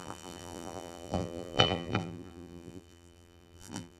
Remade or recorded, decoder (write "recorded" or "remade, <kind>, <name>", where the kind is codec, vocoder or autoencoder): remade, vocoder, BigVGAN v2